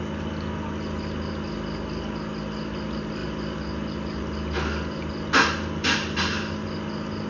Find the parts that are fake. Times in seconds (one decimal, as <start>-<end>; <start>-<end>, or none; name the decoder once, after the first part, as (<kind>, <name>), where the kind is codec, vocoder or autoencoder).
none